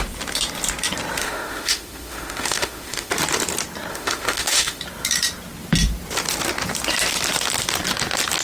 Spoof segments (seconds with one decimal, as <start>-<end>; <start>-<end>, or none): 1.2-3.1; 3.9-4.8